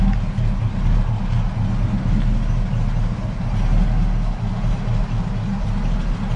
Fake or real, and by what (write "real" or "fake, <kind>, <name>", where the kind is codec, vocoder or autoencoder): real